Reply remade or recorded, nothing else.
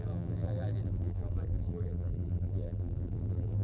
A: remade